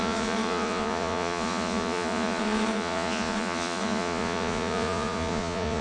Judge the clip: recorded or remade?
remade